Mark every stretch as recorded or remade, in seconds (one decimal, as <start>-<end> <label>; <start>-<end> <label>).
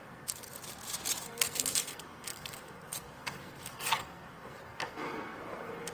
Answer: 0.0-0.6 remade; 0.6-1.2 recorded; 1.2-5.9 remade